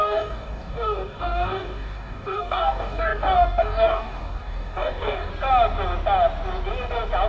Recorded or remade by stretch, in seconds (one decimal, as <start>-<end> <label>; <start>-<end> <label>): 0.0-5.3 remade; 5.3-7.3 recorded